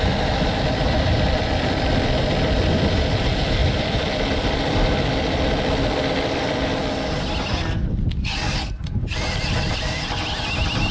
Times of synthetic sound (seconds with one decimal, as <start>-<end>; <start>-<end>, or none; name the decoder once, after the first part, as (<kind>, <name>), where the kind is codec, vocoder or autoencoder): 0.0-6.8 (vocoder, BigVGAN v2); 9.7-10.9